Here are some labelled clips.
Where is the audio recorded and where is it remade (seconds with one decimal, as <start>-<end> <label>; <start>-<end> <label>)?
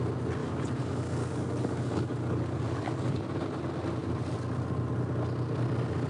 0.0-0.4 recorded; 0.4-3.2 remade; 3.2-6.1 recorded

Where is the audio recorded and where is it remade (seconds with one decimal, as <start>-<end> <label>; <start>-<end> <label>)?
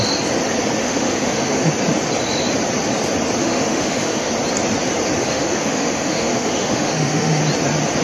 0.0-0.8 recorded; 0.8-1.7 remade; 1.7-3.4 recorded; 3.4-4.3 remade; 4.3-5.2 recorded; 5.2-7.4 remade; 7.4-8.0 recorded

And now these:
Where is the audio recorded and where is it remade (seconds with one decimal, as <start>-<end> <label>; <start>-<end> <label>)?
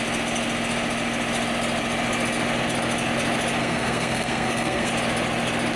0.0-3.6 recorded; 3.6-4.9 remade; 4.9-5.8 recorded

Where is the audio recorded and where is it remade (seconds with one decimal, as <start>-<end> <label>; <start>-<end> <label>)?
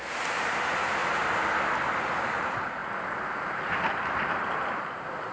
0.0-1.0 remade; 1.0-1.9 recorded; 1.9-5.3 remade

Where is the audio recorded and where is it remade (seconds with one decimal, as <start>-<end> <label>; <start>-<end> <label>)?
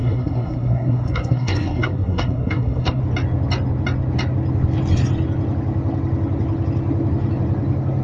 0.0-3.0 remade; 3.0-8.0 recorded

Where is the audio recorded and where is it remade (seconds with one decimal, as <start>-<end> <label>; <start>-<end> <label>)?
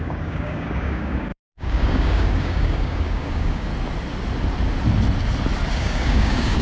0.0-3.7 remade; 3.7-5.7 recorded; 5.7-6.6 remade